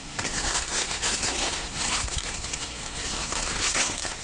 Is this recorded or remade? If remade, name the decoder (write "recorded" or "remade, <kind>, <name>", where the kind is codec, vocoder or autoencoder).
remade, codec, SNAC